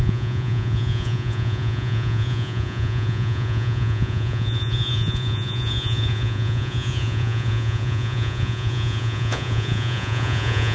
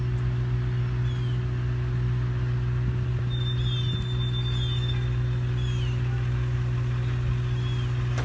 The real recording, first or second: second